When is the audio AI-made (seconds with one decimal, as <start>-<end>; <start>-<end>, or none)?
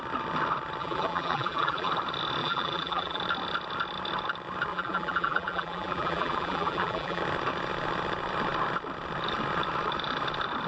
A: 0.8-1.9; 2.4-3.2; 4.7-7.2